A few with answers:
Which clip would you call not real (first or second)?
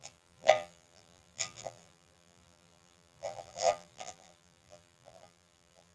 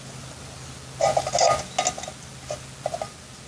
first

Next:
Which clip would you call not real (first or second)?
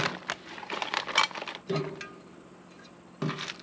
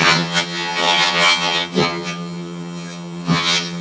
second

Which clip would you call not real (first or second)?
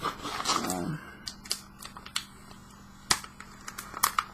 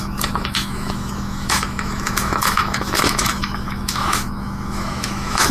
second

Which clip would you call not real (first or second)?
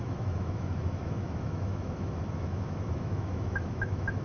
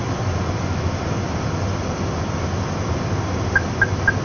first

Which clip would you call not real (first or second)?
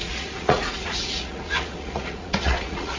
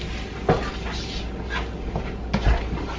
first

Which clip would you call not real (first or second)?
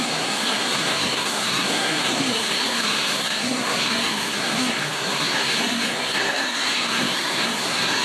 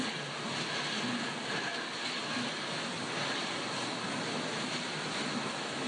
first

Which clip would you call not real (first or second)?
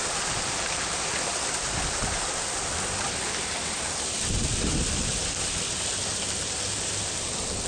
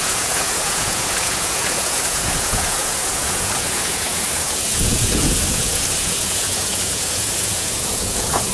second